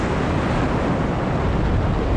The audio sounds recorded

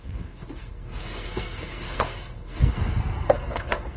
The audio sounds remade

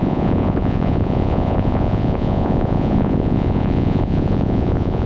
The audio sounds remade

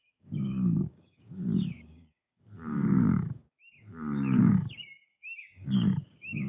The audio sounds remade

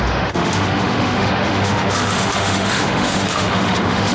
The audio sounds remade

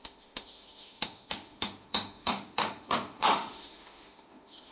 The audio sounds remade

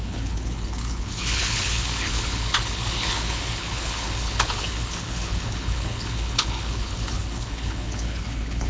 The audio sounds remade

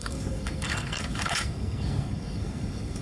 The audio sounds remade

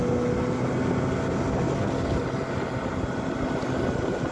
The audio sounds recorded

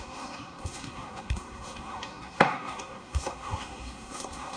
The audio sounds remade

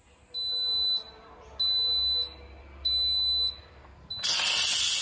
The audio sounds recorded